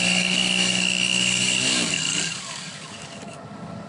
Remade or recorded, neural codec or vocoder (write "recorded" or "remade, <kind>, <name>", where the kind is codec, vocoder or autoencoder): remade, codec, DAC